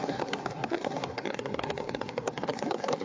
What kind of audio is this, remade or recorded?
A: remade